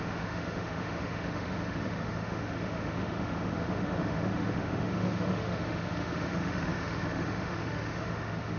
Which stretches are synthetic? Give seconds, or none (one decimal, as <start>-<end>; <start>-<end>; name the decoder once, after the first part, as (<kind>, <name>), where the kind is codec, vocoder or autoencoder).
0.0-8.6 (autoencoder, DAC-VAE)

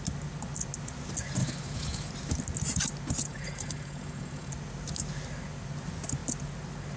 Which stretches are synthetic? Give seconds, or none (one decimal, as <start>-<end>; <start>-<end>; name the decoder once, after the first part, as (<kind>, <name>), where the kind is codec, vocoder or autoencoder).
1.4-2.1 (autoencoder, DAC-VAE); 3.3-4.5

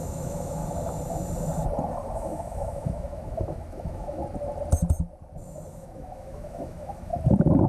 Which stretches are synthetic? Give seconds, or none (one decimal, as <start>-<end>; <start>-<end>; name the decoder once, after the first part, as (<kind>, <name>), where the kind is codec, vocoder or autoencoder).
0.0-0.6 (autoencoder, DAC-VAE); 2.2-4.2; 5.7-7.1

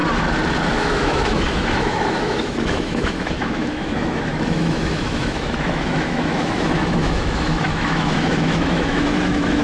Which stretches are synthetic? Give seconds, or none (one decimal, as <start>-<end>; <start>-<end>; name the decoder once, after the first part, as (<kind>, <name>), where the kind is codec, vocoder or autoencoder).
0.7-9.6 (autoencoder, DAC-VAE)

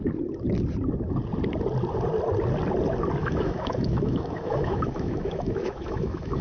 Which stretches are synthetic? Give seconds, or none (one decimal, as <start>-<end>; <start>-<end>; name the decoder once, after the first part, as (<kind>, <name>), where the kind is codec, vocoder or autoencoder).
3.2-6.4 (autoencoder, DAC-VAE)

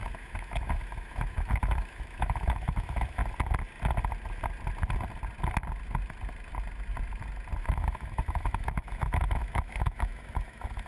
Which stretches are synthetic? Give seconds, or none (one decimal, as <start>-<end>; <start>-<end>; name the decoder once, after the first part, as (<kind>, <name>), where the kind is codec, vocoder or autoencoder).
0.0-3.2 (autoencoder, DAC-VAE); 7.6-10.9

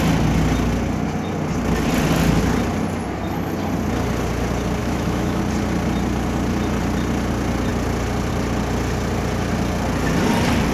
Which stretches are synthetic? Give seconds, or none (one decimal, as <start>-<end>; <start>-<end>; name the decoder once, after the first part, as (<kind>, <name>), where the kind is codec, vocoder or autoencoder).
4.8-5.4 (autoencoder, DAC-VAE)

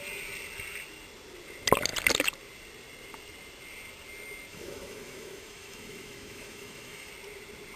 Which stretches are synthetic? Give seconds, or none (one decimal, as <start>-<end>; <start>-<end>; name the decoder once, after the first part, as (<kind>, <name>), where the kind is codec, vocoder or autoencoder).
4.5-7.1 (autoencoder, DAC-VAE)